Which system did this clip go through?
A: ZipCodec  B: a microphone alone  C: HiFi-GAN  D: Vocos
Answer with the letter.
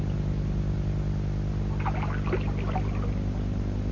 B